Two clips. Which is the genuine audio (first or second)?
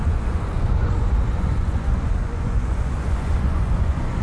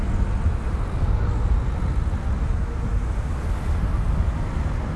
second